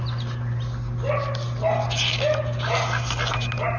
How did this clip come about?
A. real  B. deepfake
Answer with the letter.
A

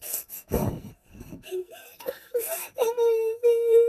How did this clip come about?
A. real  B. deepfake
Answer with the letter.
B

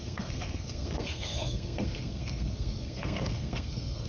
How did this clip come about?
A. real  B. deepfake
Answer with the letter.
B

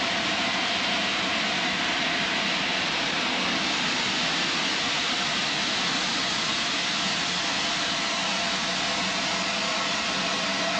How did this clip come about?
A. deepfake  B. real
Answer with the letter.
B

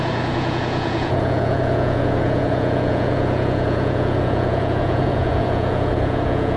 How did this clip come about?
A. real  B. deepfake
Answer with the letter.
B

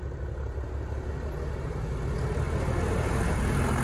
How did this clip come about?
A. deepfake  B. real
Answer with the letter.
B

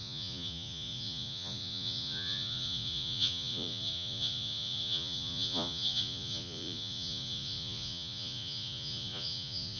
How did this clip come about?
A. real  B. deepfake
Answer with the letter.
B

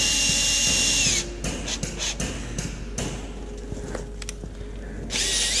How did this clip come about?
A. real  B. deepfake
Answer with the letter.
A